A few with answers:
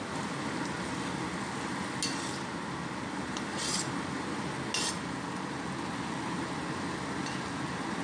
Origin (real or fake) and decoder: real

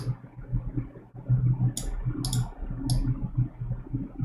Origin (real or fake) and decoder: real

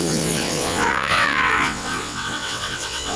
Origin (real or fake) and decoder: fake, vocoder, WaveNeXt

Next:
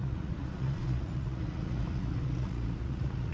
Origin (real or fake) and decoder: fake, vocoder, Vocos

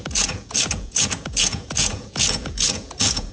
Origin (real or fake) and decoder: fake, vocoder, Vocos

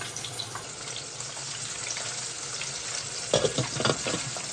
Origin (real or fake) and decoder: real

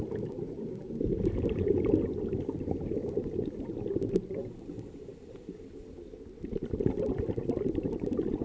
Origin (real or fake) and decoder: real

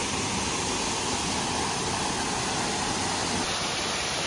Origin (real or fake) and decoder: real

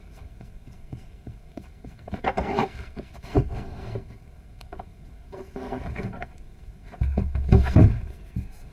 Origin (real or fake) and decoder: fake, codec, SNAC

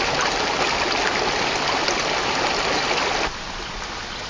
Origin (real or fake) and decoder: real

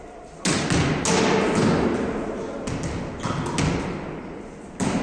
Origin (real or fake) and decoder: real